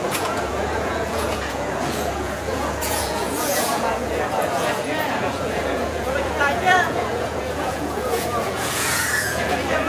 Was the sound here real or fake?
fake